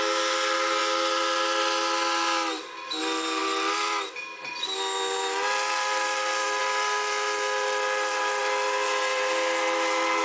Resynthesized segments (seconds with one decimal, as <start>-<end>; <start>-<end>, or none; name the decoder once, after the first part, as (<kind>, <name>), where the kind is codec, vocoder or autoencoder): none

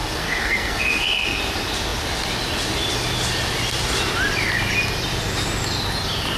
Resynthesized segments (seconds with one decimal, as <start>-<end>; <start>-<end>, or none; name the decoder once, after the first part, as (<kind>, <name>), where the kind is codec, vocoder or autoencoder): 0.0-1.4 (codec, SNAC)

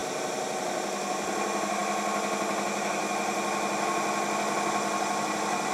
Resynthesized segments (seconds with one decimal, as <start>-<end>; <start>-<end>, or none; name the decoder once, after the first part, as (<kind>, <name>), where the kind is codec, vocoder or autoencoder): 0.0-0.6 (vocoder, BigVGAN v2)

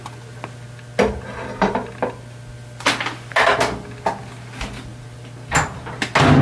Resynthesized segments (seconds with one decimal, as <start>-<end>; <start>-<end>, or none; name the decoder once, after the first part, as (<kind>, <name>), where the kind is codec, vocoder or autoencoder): none

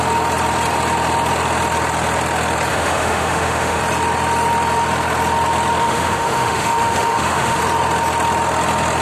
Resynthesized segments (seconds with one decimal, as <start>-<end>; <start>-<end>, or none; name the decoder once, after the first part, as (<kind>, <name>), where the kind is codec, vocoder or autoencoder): 2.7-3.8 (autoencoder, DAC-VAE); 5.8-7.6